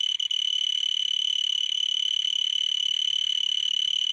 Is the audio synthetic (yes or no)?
yes